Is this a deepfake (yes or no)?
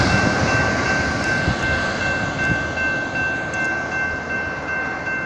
no